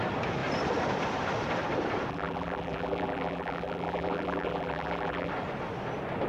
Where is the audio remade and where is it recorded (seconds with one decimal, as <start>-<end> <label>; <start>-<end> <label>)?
0.0-2.1 recorded; 2.1-5.3 remade; 5.3-6.3 recorded